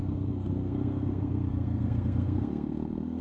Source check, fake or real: fake